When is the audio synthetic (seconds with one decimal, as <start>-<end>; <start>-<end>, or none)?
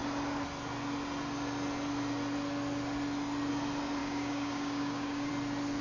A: 4.0-5.3